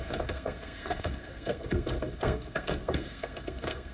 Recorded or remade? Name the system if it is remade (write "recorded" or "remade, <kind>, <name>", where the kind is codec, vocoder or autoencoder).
remade, codec, SNAC